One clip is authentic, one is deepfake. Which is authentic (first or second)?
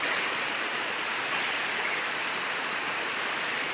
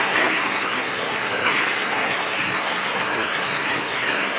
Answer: first